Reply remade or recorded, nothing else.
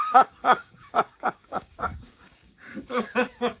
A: remade